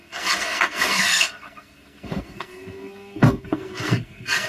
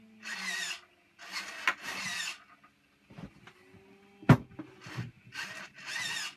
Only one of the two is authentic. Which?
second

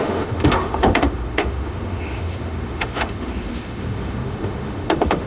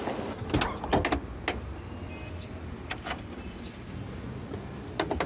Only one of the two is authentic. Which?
second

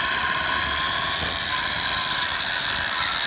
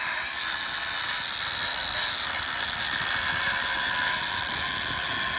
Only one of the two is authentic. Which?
second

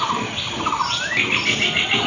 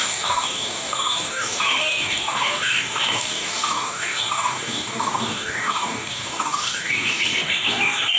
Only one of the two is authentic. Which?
first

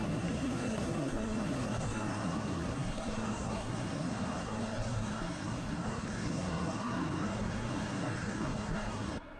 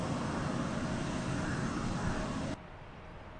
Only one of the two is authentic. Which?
second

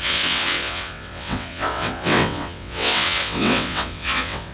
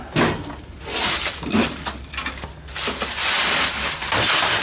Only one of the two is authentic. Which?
second